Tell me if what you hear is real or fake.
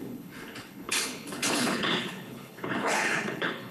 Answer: fake